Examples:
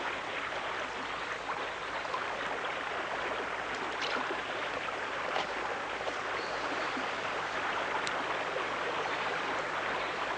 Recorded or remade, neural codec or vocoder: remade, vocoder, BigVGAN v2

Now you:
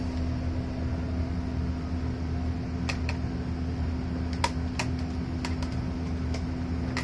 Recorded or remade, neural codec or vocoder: recorded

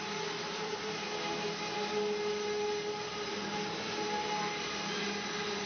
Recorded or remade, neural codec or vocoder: recorded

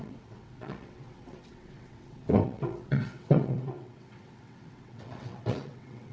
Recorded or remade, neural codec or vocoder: remade, vocoder, WaveNeXt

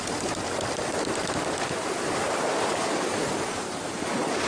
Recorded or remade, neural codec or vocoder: remade, vocoder, BigVGAN v2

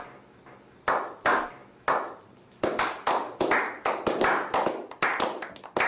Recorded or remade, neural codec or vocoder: recorded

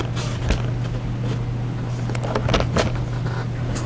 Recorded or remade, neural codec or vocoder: recorded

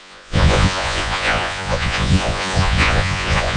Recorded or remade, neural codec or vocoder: remade, vocoder, Vocos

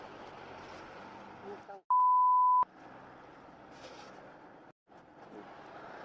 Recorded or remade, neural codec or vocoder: recorded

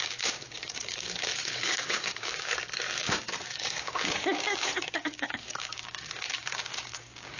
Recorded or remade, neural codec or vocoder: remade, codec, DAC